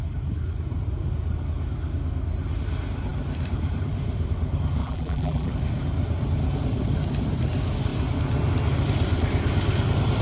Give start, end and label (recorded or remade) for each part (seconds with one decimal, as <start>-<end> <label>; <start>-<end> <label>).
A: 0.0-4.8 recorded; 4.8-5.5 remade; 5.5-10.2 recorded